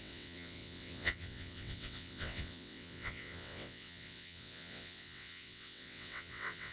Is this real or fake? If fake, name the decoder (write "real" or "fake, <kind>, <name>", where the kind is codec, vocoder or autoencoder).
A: fake, vocoder, WaveNeXt